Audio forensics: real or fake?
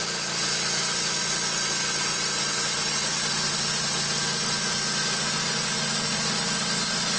real